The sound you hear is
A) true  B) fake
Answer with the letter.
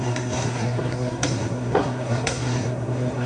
B